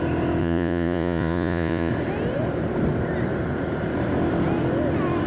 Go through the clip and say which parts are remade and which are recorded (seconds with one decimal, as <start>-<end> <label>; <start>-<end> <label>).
0.0-0.4 recorded; 0.4-1.9 remade; 1.9-5.3 recorded